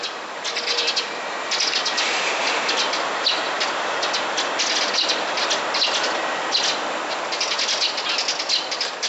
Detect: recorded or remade recorded